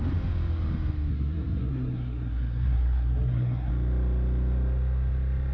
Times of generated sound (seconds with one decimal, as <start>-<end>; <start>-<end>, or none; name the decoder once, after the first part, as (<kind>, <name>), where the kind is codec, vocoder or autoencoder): 1.1-3.7 (codec, SNAC)